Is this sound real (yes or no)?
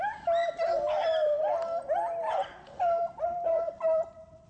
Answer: yes